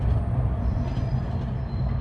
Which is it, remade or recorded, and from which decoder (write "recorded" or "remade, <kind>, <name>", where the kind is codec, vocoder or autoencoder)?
recorded